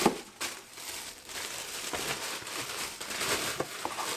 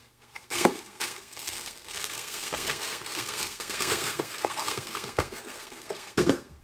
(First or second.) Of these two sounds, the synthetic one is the second